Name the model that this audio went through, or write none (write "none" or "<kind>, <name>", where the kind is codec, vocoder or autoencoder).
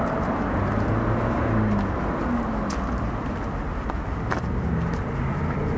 none